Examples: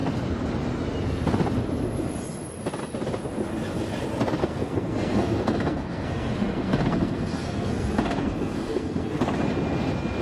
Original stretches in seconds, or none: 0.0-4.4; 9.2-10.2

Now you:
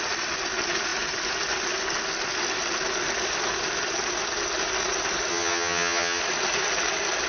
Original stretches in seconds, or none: 0.0-5.3; 6.2-7.3